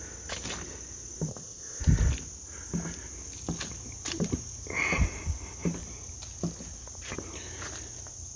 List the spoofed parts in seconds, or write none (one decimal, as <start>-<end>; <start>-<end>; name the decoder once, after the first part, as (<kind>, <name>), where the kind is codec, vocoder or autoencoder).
1.3-1.8 (codec, ZipCodec)